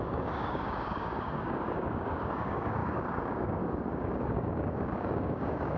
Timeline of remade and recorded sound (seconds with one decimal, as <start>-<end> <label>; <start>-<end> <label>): 0.0-5.8 remade

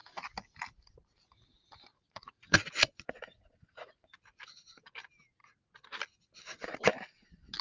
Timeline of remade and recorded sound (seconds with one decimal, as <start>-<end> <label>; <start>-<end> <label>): 0.0-1.9 recorded; 1.9-4.2 remade; 4.2-7.6 recorded

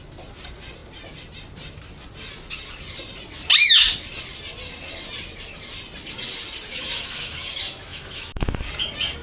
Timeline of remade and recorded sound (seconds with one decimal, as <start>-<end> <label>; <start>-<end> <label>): 0.0-6.7 recorded; 6.7-7.5 remade; 7.5-7.9 recorded; 7.9-8.7 remade; 8.7-9.2 recorded

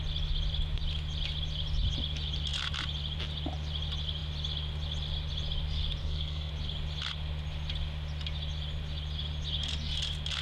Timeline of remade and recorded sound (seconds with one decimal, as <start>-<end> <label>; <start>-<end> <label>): 0.0-6.0 recorded; 6.0-6.5 remade; 6.5-10.4 recorded

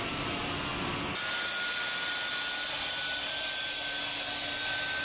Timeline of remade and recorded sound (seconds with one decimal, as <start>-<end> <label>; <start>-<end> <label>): 0.0-5.0 recorded

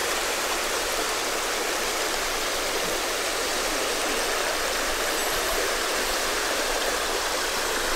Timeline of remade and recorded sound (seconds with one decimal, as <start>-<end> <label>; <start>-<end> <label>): 0.0-1.1 remade; 1.1-5.2 recorded; 5.2-7.6 remade; 7.6-8.0 recorded

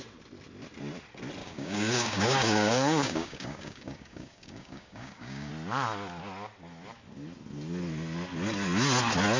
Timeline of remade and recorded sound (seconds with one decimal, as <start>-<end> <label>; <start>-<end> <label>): 0.0-1.4 recorded; 1.4-5.5 remade; 5.5-9.4 recorded